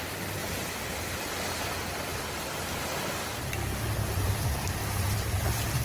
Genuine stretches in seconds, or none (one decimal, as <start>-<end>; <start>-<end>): 0.0-4.8